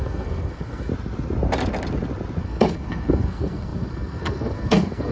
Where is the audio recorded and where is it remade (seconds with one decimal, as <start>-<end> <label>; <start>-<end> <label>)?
0.0-0.9 remade; 0.9-2.4 recorded; 2.4-5.1 remade